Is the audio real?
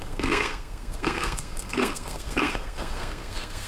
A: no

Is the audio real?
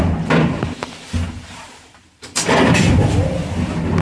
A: no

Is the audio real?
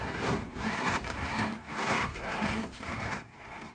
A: no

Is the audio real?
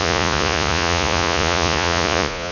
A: no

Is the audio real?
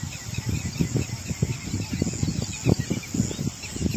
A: yes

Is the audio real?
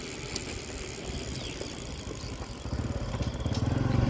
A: yes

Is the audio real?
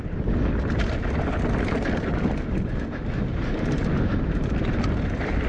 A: yes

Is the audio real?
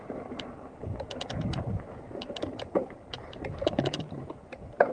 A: no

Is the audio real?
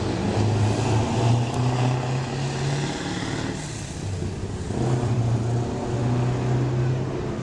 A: yes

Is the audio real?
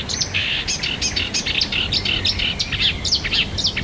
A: yes